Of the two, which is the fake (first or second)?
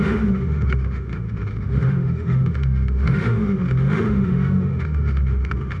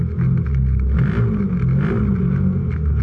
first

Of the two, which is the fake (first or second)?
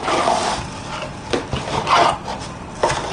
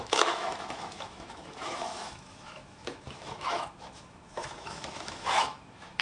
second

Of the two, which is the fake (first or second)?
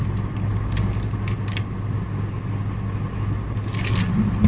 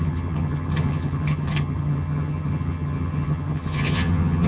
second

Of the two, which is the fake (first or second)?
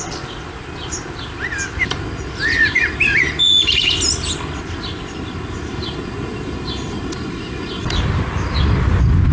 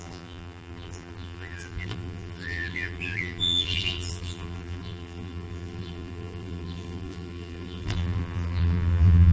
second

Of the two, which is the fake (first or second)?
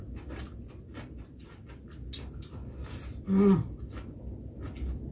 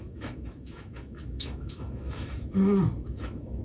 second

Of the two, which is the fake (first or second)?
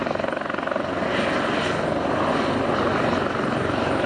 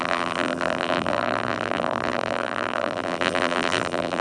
second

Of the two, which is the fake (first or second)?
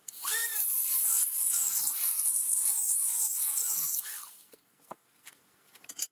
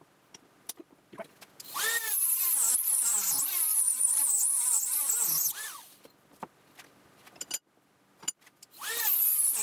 first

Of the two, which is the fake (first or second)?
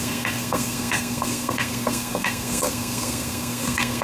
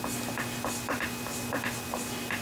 first